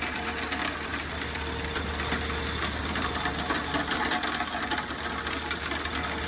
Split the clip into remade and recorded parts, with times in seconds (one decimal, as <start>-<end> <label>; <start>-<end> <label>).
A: 0.0-6.3 recorded